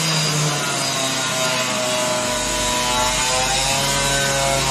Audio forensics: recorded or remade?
recorded